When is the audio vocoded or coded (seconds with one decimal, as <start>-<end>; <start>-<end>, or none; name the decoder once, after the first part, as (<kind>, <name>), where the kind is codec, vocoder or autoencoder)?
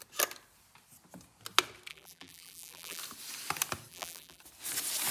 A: 1.9-3.0 (vocoder, BigVGAN v2); 3.9-4.4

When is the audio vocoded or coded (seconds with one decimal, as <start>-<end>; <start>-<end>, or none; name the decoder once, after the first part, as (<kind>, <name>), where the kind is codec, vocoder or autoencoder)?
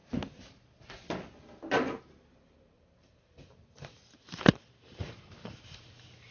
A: 2.3-6.3 (vocoder, BigVGAN v2)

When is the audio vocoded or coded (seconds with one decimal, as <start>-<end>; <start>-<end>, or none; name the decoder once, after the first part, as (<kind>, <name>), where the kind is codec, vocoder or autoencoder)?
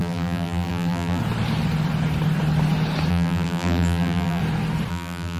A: 0.0-1.2 (vocoder, BigVGAN v2); 3.1-4.4; 4.9-5.4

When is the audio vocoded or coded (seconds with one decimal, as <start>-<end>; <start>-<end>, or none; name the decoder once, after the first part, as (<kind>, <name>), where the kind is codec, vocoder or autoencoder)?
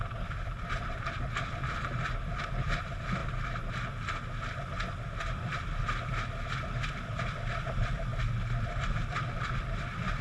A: 0.0-8.1 (vocoder, BigVGAN v2); 8.7-10.2